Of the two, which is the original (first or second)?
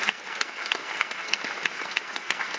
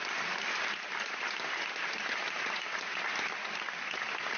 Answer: second